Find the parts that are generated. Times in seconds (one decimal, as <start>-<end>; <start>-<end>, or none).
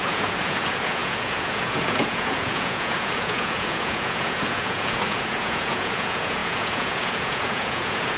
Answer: 0.0-8.2